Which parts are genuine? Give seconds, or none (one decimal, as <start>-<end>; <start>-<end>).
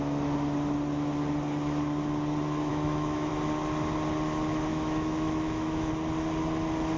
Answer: 0.0-2.7; 3.3-4.7; 5.9-7.0